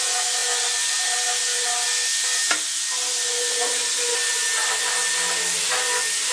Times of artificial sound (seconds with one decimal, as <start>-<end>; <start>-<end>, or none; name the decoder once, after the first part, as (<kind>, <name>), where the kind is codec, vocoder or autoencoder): none